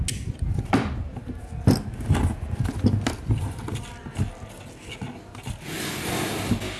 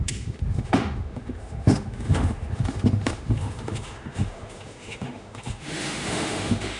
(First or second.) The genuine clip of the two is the first